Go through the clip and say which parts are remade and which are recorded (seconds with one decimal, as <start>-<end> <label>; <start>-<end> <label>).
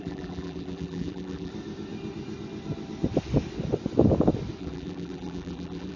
0.0-1.5 remade; 1.5-4.6 recorded; 4.6-6.0 remade